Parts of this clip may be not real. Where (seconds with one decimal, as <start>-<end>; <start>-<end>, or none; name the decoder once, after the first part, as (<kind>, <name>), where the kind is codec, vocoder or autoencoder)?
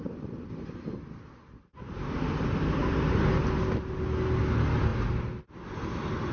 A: none